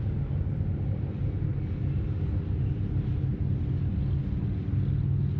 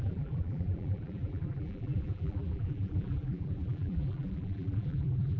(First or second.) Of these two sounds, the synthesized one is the second